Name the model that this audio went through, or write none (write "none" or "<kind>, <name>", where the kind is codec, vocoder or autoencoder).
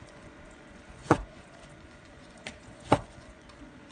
vocoder, Vocos